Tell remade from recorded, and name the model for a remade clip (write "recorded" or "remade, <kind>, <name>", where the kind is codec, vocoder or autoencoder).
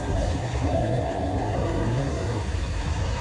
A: remade, codec, SNAC